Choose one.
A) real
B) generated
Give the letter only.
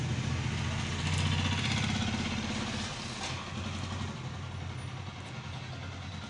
A